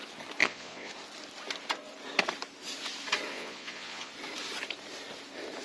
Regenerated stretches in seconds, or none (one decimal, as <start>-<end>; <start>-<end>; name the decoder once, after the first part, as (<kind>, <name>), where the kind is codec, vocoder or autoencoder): 0.4-0.9 (vocoder, Vocos); 3.3-4.1